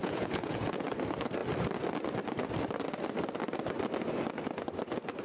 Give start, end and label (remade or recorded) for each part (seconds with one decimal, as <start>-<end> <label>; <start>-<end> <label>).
0.0-0.7 remade; 0.7-5.2 recorded